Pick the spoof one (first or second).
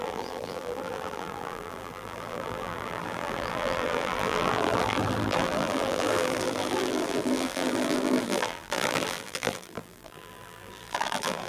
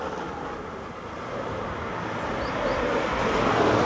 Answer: first